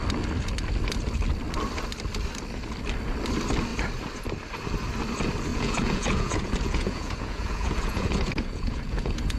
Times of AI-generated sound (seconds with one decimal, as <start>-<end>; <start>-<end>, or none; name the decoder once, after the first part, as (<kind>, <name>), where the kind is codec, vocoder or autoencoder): 5.5-9.4 (vocoder, Vocos)